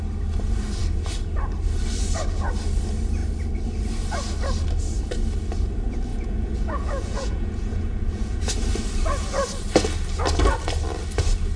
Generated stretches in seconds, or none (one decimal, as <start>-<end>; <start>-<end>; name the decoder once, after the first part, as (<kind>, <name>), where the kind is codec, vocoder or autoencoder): 6.1-8.4 (vocoder, Vocos)